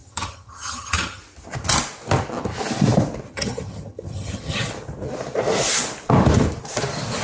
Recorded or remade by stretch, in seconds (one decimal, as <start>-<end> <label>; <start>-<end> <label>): 0.0-1.2 remade; 1.2-3.3 recorded; 3.3-4.7 remade; 4.7-7.2 recorded